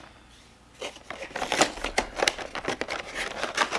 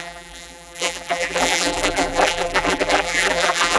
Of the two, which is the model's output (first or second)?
second